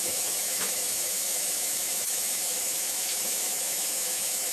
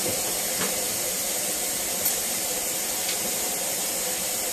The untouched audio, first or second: second